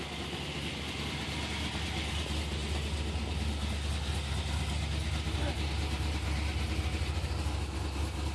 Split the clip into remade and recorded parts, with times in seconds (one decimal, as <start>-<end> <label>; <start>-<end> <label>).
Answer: 0.0-8.3 recorded